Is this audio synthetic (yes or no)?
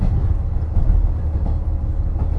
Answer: no